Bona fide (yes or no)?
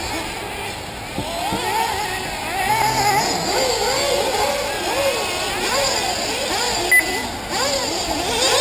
yes